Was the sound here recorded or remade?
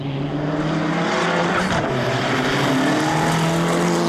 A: recorded